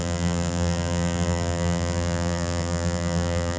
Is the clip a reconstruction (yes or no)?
yes